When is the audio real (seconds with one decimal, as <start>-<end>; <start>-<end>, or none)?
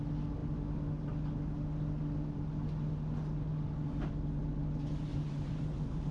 0.0-5.1